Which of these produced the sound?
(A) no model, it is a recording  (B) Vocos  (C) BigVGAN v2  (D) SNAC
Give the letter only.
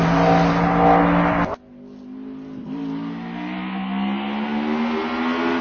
A